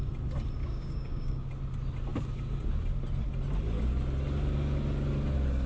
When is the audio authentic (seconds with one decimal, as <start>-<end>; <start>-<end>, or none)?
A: 0.0-0.6; 1.5-5.7